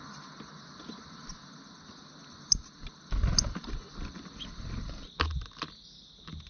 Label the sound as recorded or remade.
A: recorded